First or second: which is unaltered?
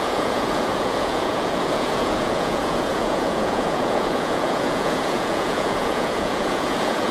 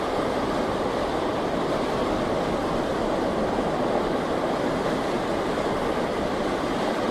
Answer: second